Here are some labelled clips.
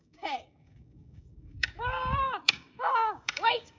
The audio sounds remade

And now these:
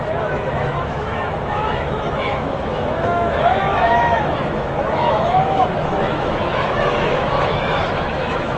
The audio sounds remade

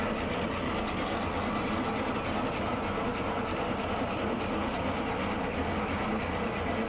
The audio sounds recorded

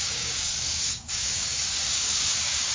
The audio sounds remade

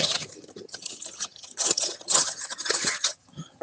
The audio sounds remade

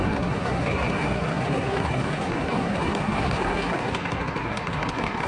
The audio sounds remade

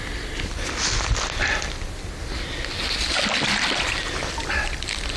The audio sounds recorded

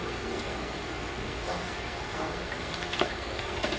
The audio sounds remade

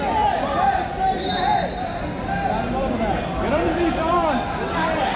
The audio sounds recorded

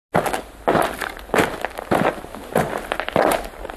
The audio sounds recorded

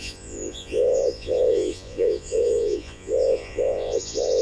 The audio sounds remade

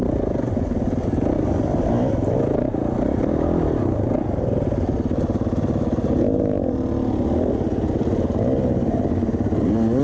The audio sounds recorded